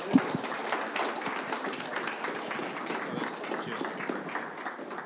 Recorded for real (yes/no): yes